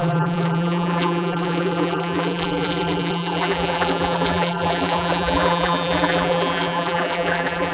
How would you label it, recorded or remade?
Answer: remade